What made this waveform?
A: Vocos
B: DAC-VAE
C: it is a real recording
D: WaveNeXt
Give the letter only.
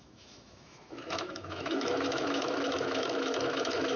B